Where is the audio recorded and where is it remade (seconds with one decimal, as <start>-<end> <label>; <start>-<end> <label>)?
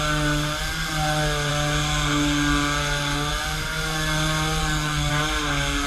0.0-4.6 recorded; 4.6-5.1 remade; 5.1-5.9 recorded